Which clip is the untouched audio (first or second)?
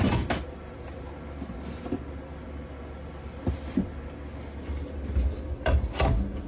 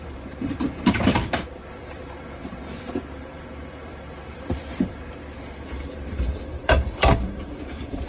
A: first